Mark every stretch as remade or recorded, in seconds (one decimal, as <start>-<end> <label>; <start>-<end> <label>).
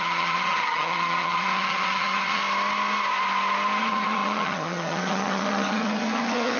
0.0-2.4 remade; 2.4-3.8 recorded; 3.8-6.6 remade